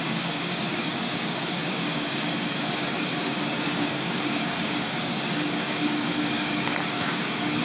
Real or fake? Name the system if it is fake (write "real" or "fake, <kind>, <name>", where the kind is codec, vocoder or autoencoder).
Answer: fake, codec, DAC